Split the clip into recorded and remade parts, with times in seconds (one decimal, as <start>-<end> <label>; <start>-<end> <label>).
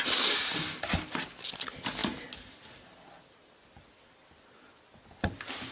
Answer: 0.0-5.7 recorded